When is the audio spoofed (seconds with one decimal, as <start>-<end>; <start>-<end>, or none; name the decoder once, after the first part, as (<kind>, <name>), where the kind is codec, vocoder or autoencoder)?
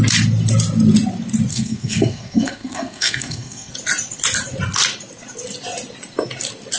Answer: 1.5-3.7 (codec, SNAC)